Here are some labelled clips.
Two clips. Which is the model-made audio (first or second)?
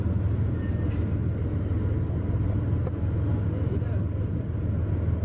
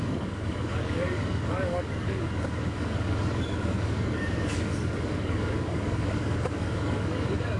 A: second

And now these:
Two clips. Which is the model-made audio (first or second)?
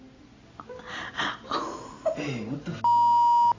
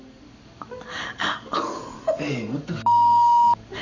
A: second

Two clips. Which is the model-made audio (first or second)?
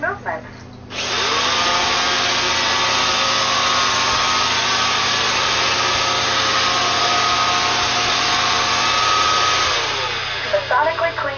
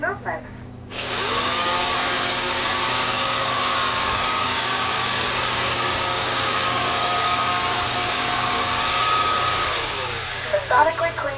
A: second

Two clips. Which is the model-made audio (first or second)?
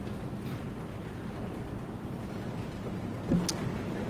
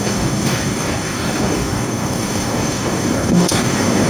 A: second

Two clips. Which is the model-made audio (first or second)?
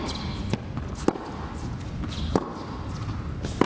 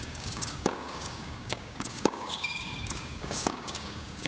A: second